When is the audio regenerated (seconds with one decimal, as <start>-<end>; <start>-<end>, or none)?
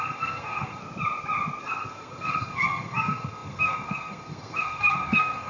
0.0-0.8; 1.6-5.5